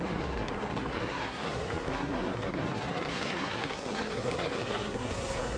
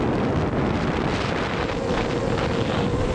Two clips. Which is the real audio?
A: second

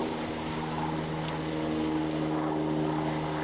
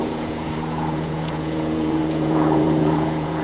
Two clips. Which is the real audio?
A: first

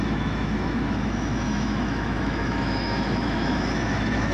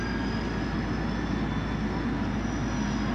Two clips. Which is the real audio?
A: second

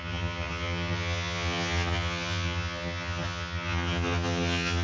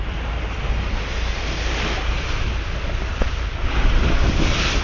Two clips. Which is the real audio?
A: second